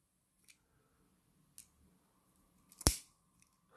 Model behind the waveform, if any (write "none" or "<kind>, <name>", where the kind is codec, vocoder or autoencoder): none